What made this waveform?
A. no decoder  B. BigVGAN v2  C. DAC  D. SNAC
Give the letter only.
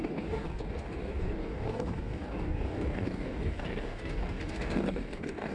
C